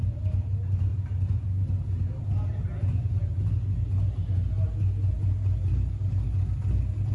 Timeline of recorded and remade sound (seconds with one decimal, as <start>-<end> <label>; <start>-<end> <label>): 0.0-7.1 recorded